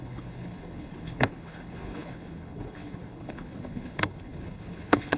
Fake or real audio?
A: fake